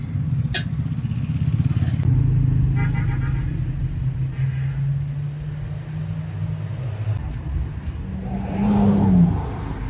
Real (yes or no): yes